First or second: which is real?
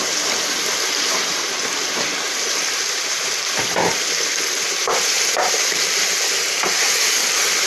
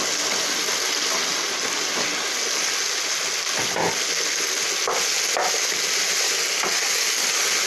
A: second